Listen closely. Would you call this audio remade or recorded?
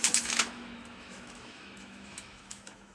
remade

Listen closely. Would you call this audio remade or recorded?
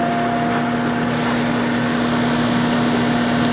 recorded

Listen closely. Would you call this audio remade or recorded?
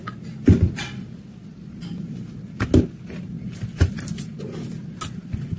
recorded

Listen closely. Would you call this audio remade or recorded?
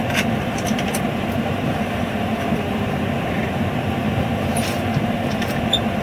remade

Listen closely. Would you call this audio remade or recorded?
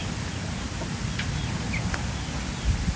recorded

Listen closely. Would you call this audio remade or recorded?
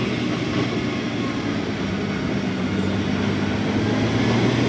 recorded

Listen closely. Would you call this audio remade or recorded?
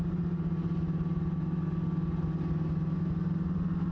recorded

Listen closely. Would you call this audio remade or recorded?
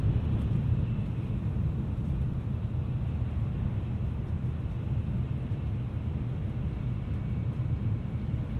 recorded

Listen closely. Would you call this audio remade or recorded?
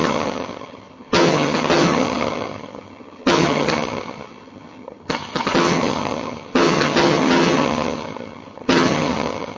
remade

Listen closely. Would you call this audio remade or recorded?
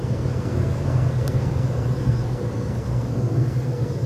remade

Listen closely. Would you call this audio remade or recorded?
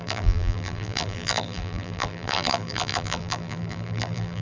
remade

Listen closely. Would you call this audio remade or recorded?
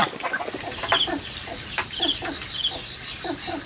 recorded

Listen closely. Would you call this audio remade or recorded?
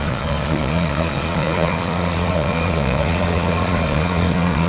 remade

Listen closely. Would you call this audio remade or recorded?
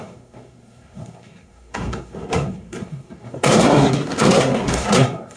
remade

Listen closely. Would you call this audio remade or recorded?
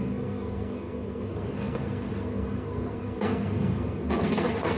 remade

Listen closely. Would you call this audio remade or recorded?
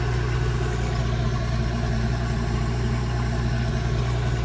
recorded